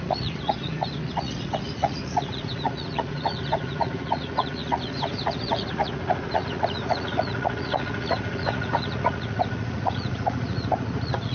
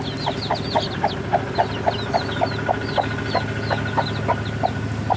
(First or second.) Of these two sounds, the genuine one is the second